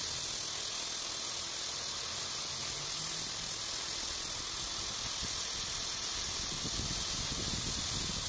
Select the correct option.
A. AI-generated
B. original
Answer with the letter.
B